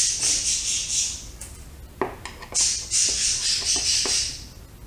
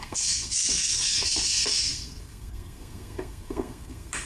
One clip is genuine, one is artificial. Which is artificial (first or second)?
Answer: second